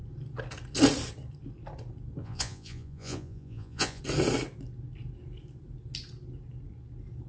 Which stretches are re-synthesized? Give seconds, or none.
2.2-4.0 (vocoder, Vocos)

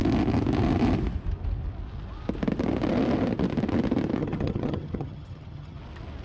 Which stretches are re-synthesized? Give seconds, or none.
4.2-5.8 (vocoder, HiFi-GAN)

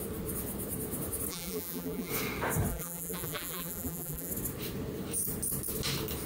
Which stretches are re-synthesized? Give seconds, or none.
1.3-2.1 (vocoder, BigVGAN v2); 2.7-4.3